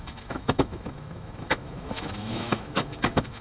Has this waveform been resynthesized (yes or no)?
yes